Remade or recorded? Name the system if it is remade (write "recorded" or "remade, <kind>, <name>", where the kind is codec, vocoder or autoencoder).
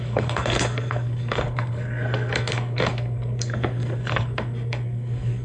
remade, codec, SNAC